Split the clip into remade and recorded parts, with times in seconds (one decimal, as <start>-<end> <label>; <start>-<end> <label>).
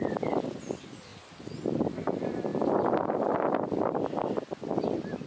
0.0-2.5 recorded; 2.5-3.3 remade; 3.3-5.3 recorded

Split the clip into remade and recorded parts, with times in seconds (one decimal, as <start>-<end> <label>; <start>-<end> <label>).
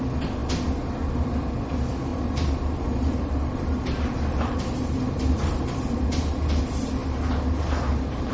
0.0-2.1 recorded; 2.1-6.6 remade; 6.6-7.0 recorded; 7.0-8.3 remade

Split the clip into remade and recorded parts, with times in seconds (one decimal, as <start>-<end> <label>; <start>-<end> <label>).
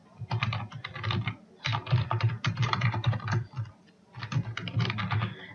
0.0-1.8 recorded; 1.8-3.9 remade; 3.9-5.5 recorded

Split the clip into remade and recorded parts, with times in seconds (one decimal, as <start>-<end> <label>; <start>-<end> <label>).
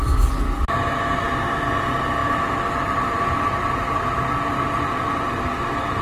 0.0-6.0 recorded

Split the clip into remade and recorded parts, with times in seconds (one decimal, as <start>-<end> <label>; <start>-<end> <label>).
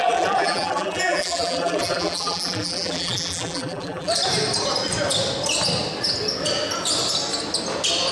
0.0-4.1 remade; 4.1-8.1 recorded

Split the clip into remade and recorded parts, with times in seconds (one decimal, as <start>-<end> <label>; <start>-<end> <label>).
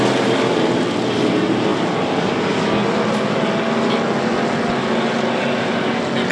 0.0-1.7 recorded; 1.7-2.5 remade; 2.5-6.3 recorded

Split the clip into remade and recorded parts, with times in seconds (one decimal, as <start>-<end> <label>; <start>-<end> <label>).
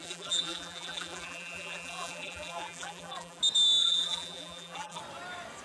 0.0-3.4 remade; 3.4-3.8 recorded; 3.8-5.0 remade; 5.0-5.6 recorded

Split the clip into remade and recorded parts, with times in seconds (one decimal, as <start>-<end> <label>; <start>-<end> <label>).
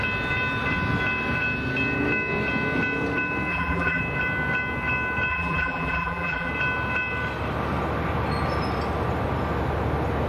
0.0-3.5 recorded; 3.5-4.0 remade; 4.0-5.3 recorded; 5.3-6.5 remade; 6.5-10.3 recorded